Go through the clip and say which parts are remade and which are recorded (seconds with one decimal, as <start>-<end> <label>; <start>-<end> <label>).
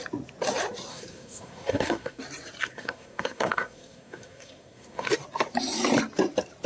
0.0-0.9 recorded; 0.9-2.2 remade; 2.2-2.6 recorded; 2.6-5.1 remade; 5.1-6.7 recorded